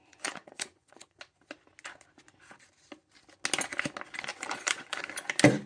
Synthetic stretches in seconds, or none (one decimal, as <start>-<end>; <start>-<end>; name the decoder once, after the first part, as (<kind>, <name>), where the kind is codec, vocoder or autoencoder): 0.0-1.2 (vocoder, Vocos); 4.3-5.0